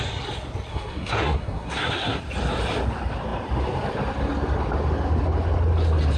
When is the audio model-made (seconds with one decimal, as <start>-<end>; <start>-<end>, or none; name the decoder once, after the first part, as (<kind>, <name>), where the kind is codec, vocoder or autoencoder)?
0.7-2.2 (codec, SNAC)